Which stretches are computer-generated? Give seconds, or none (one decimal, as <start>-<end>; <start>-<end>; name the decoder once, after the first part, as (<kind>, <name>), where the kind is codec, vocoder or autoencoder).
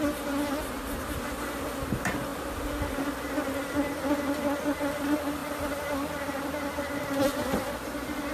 none